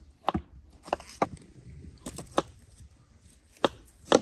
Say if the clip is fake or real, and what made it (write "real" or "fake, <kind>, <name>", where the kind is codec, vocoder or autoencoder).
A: real